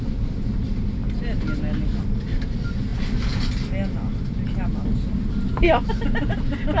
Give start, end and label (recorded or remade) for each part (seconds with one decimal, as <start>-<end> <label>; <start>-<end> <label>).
0.0-6.8 recorded